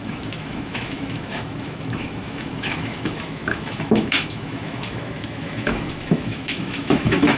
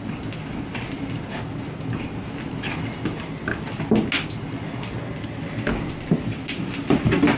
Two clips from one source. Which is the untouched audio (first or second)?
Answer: second